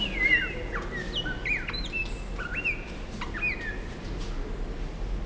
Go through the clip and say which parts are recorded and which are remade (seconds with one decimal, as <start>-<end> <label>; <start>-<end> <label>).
0.0-5.3 recorded